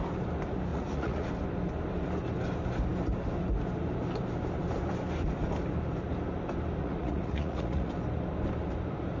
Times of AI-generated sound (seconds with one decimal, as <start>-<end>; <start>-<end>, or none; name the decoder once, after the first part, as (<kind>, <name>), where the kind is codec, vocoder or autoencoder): 0.7-1.3 (vocoder, Vocos); 6.8-7.9